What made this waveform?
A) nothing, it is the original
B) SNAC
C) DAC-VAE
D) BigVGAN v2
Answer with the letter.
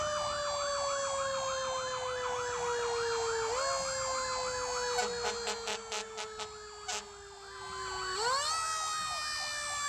A